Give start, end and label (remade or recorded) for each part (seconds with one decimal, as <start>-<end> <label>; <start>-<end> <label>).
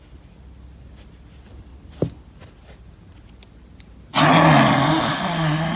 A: 0.0-5.8 recorded